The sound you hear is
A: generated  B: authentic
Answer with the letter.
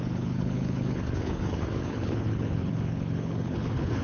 A